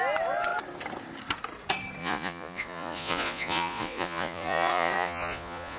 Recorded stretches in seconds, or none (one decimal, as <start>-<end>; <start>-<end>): 0.0-2.0

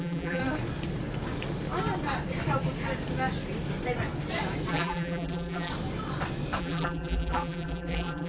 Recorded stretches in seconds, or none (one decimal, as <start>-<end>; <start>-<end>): 0.4-4.7; 5.7-6.6

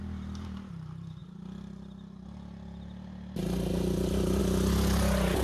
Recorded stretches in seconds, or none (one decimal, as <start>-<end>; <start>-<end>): 0.0-5.4

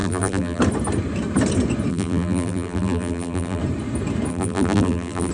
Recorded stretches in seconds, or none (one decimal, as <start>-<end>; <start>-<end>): 0.6-1.9; 3.6-4.3

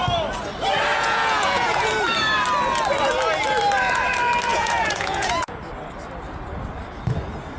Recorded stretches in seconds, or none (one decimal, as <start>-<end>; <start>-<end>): 0.0-0.9; 1.9-4.5; 5.6-7.6